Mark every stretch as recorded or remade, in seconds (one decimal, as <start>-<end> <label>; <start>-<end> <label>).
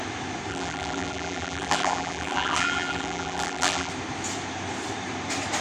0.0-0.5 recorded; 0.5-3.9 remade; 3.9-5.6 recorded